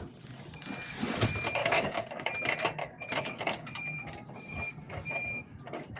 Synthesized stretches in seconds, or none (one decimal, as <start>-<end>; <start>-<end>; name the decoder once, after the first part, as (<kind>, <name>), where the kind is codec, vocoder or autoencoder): 1.6-2.3 (codec, DAC); 2.8-6.0